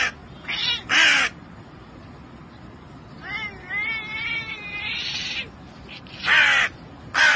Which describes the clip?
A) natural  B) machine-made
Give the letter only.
A